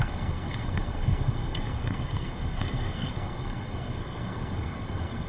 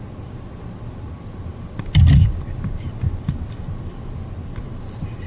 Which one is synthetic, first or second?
first